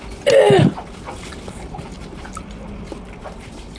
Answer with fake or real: real